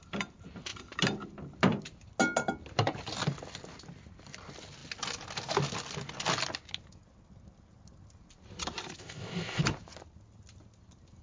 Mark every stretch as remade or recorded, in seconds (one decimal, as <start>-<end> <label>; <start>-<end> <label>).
0.0-9.0 recorded; 9.0-9.6 remade; 9.6-11.2 recorded

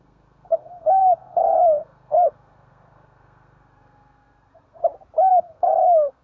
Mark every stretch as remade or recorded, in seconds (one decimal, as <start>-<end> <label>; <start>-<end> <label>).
0.0-4.8 remade; 4.8-5.3 recorded; 5.3-6.2 remade

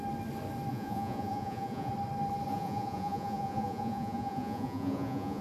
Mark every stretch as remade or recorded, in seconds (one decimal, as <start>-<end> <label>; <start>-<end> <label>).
0.0-0.7 recorded; 0.7-1.9 remade; 1.9-2.5 recorded; 2.5-5.4 remade

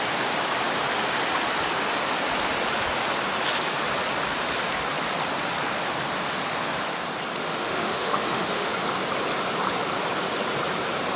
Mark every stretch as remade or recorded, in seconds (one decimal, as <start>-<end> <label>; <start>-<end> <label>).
0.0-7.4 recorded; 7.4-8.7 remade; 8.7-11.2 recorded

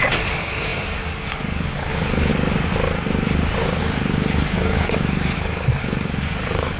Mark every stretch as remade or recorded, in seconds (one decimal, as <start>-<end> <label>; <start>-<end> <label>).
0.0-2.3 remade; 2.3-3.8 recorded; 3.8-6.8 remade